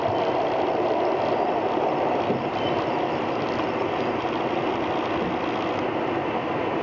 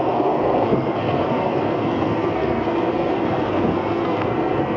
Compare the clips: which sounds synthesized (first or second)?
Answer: second